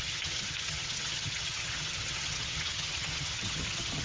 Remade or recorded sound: remade